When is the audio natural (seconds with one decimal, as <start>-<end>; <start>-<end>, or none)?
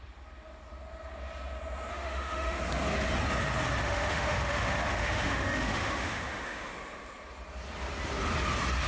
0.0-1.9; 2.6-3.8; 6.7-8.9